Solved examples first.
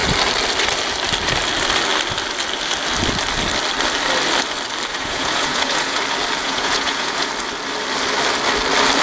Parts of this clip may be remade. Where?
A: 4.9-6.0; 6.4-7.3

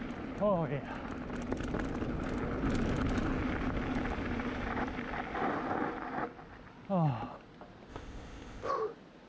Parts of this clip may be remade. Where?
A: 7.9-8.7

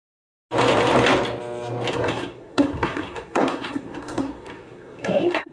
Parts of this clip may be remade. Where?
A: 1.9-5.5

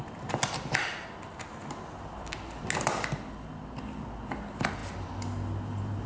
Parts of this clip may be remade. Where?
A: none

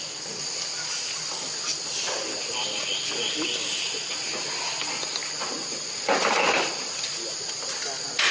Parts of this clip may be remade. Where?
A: none